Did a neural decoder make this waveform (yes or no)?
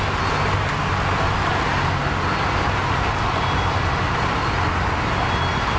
no